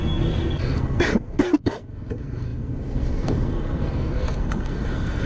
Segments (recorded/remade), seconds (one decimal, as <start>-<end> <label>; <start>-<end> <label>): 0.0-5.3 remade